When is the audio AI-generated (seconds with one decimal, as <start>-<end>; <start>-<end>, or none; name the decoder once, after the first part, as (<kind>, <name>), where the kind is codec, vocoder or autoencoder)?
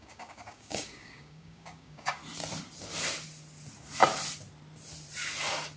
0.0-2.2 (codec, DAC)